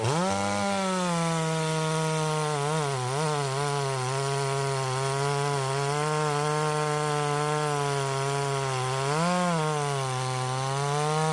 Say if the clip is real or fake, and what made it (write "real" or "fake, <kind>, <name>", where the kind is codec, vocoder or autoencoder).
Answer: real